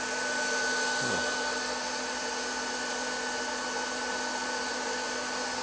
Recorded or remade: recorded